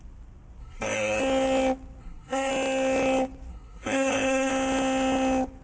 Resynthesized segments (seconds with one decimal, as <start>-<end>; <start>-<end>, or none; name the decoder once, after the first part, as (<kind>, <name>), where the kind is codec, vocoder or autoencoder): 0.6-1.2 (codec, SNAC); 2.0-2.5; 3.5-4.5